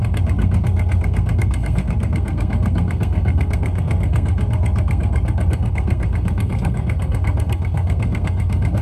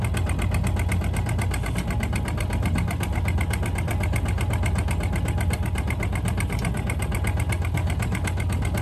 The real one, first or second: second